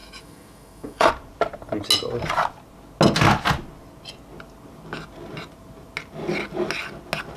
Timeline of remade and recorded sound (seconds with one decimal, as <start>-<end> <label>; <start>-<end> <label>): 0.0-1.1 remade; 1.1-7.4 recorded